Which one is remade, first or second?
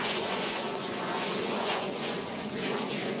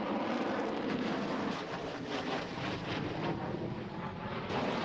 first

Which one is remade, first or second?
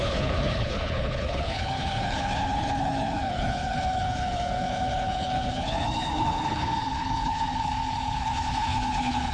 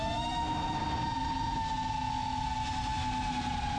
first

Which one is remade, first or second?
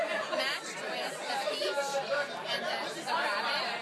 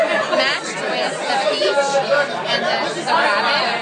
first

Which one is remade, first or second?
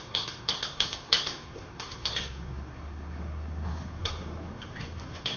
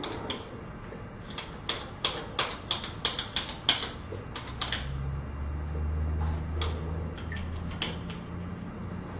first